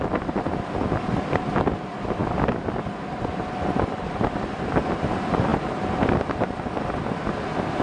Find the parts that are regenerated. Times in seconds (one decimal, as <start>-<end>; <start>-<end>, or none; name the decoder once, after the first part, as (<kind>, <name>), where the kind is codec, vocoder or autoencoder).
none